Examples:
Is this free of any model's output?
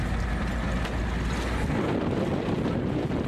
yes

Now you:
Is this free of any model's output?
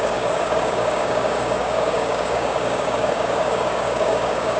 no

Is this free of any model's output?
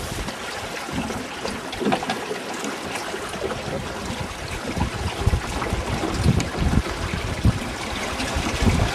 yes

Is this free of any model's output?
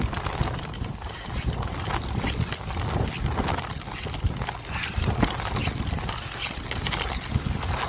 yes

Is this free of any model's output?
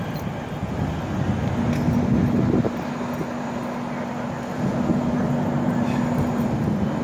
yes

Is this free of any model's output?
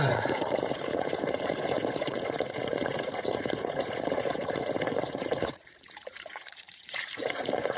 no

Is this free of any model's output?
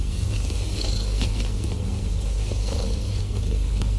no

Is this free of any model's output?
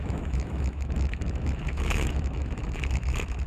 no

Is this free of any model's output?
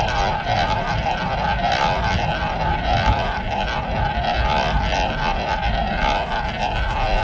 yes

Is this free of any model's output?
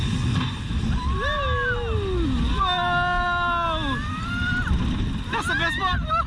yes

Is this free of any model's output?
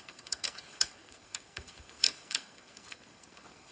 no